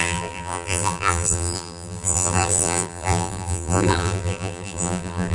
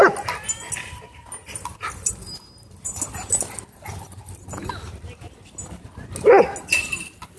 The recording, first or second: second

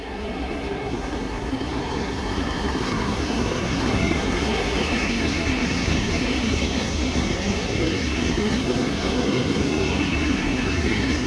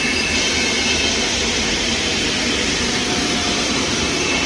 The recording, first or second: second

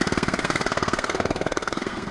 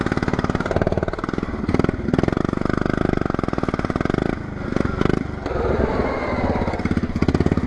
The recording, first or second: second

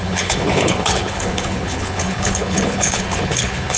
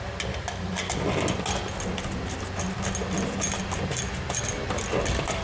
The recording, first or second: second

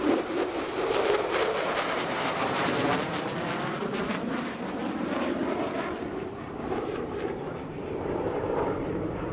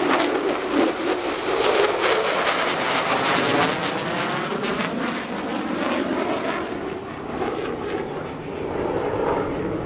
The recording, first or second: second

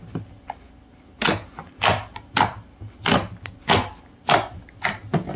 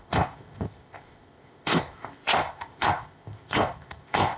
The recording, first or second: first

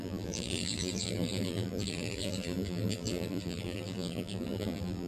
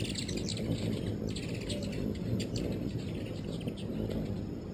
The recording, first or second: second